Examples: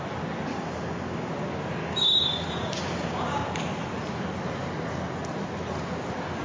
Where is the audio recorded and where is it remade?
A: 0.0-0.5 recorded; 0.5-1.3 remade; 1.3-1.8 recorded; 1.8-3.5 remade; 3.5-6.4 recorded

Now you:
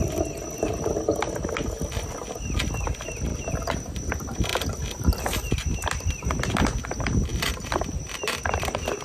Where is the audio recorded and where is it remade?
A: 0.0-3.3 recorded; 3.3-3.9 remade; 3.9-9.0 recorded

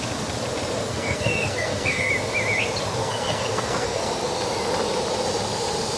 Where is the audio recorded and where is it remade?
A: 0.0-0.9 recorded; 0.9-2.1 remade; 2.1-3.0 recorded; 3.0-4.1 remade; 4.1-6.0 recorded

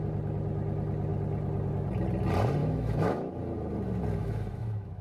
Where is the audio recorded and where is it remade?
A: 0.0-2.6 recorded; 2.6-3.3 remade; 3.3-4.2 recorded; 4.2-5.0 remade